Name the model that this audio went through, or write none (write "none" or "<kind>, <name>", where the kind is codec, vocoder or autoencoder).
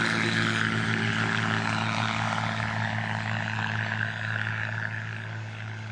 codec, DAC